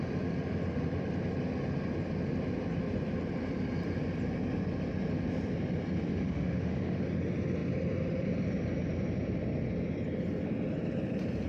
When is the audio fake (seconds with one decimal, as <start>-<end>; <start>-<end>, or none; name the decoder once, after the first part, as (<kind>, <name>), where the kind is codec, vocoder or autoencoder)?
6.1-7.0 (autoencoder, DAC-VAE)